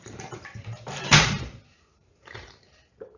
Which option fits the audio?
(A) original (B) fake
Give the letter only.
B